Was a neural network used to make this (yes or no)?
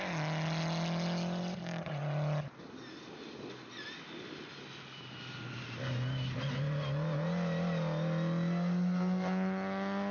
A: no